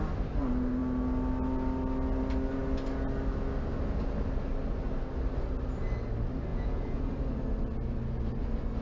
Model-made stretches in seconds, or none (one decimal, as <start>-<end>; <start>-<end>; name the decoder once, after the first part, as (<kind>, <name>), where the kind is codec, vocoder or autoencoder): 6.5-7.0 (vocoder, Vocos)